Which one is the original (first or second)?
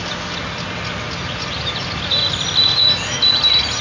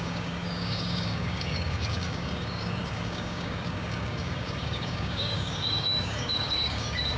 first